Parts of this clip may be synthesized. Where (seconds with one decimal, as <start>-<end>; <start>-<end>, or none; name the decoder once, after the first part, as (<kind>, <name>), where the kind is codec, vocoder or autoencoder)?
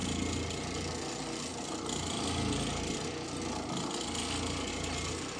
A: none